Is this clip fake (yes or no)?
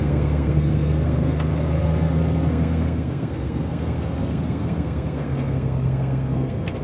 yes